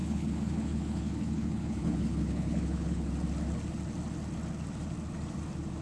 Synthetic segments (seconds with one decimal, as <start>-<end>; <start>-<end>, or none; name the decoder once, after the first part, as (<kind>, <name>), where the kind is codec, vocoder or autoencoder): 0.0-3.1 (codec, HILCodec)